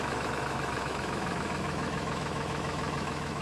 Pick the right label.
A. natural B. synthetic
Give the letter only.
B